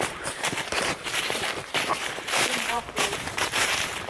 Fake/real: fake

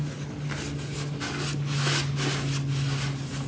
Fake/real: real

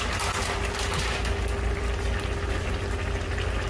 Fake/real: real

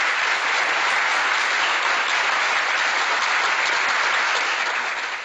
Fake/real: real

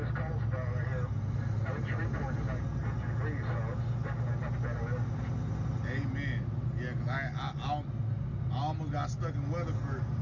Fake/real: real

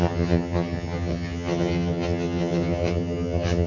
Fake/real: fake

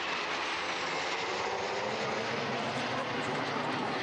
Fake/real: real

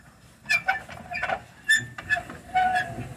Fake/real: real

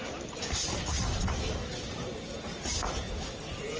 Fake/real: real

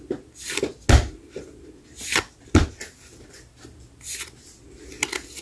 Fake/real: real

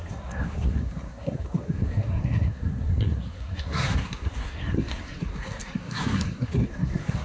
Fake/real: fake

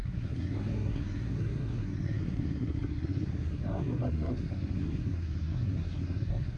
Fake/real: fake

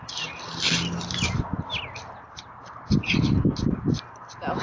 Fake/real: real